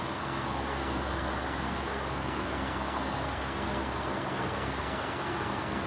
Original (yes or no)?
no